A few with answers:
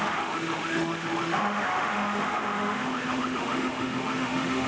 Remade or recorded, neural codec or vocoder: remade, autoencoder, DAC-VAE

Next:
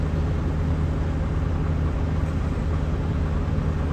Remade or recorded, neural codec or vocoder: recorded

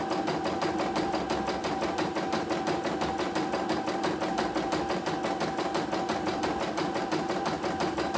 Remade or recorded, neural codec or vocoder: recorded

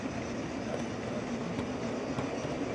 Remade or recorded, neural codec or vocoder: recorded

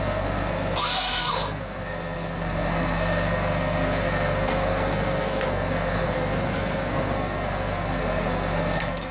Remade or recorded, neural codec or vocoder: remade, codec, SNAC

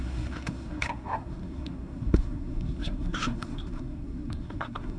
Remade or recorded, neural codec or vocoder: remade, codec, SNAC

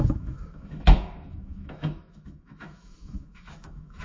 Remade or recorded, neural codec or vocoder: remade, autoencoder, DAC-VAE